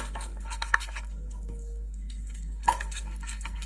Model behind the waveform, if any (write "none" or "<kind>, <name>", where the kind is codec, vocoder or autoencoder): codec, SNAC